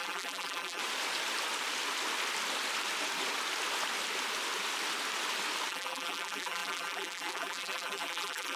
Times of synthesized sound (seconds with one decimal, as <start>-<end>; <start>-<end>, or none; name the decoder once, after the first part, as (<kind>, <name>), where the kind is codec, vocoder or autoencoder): 0.0-0.8 (vocoder, BigVGAN v2); 5.7-8.6